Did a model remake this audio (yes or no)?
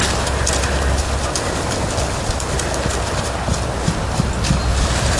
no